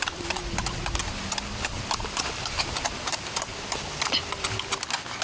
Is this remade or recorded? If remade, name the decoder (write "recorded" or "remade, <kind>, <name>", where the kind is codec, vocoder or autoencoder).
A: recorded